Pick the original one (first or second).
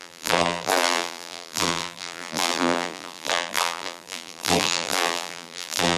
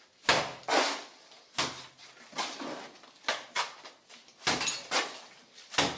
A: second